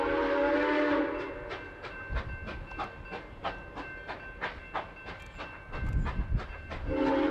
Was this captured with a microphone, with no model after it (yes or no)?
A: yes